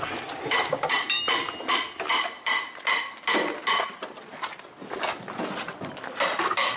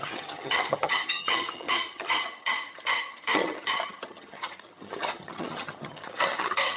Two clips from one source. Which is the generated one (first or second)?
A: second